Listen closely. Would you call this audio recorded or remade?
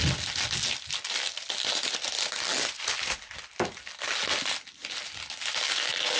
recorded